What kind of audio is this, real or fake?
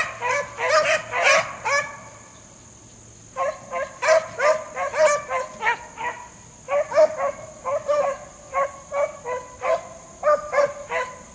real